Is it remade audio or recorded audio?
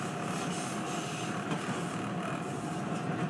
recorded